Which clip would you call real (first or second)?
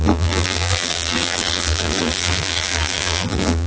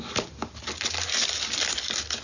second